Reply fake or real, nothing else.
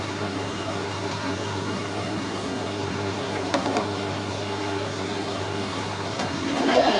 fake